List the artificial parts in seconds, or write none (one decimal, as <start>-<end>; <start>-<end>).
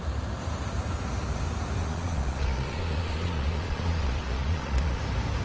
1.8-5.0